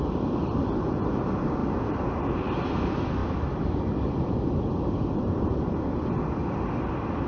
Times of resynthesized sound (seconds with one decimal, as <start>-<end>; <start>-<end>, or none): none